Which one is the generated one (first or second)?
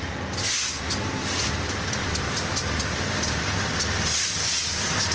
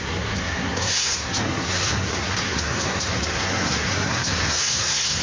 second